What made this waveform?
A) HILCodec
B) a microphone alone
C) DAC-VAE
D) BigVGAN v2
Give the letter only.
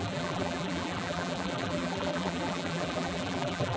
D